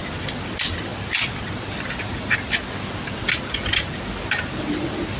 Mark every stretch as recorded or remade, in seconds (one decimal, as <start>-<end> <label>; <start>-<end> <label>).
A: 0.0-5.2 recorded